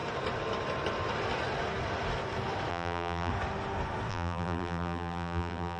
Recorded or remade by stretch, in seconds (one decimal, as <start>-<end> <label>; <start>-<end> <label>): 0.0-2.7 recorded; 2.7-3.3 remade; 3.3-4.1 recorded; 4.1-5.8 remade